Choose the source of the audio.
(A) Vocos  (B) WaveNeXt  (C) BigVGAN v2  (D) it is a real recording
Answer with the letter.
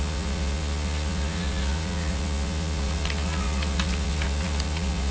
A